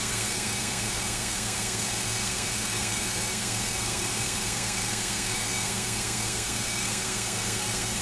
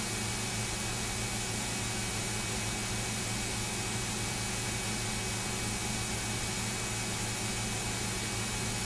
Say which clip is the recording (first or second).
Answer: second